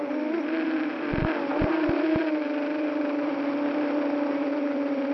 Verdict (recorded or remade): remade